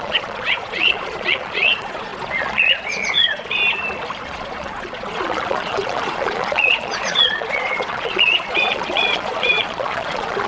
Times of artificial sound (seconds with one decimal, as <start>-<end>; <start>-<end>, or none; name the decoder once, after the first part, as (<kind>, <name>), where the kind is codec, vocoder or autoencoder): 0.0-3.6 (vocoder, Vocos); 4.2-10.5